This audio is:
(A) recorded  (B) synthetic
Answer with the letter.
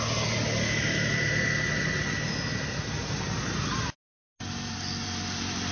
A